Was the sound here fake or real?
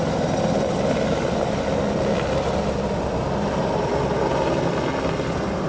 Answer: real